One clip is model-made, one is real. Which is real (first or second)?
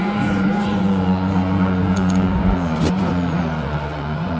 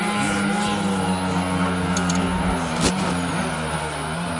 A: second